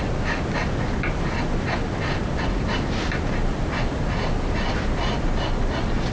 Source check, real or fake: real